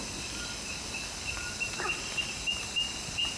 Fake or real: real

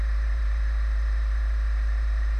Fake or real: fake